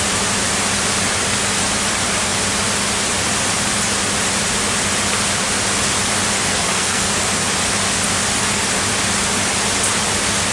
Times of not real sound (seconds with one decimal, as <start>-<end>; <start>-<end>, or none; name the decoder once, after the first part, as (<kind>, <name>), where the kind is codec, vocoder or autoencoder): 6.5-7.1 (codec, SNAC)

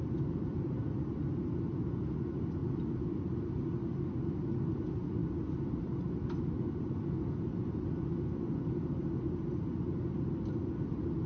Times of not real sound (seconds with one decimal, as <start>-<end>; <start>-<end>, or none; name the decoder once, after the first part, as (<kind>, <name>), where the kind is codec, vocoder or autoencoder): none

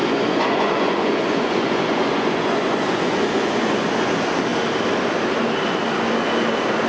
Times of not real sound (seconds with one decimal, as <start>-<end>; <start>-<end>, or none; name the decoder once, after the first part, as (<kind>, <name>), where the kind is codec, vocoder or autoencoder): 0.0-4.1 (vocoder, Vocos)

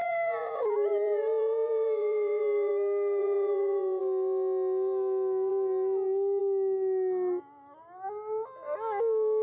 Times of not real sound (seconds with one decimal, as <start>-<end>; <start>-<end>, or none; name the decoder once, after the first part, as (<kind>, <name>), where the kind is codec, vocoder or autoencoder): 0.0-2.7 (vocoder, Vocos); 3.2-4.0

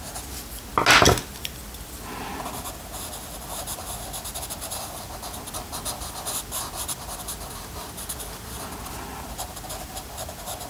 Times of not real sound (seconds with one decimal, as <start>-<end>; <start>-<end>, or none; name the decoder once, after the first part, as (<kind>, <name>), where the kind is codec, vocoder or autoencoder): none